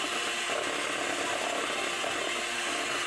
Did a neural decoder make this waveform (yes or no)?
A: no